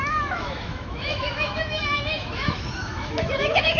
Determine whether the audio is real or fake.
fake